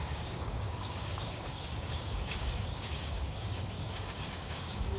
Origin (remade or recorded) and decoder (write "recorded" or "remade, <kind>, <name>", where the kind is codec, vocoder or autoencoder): remade, codec, DAC